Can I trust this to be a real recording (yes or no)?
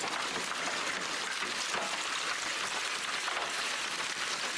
yes